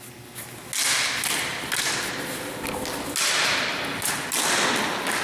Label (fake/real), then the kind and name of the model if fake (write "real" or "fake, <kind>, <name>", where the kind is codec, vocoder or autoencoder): real